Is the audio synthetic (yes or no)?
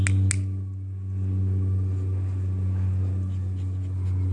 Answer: no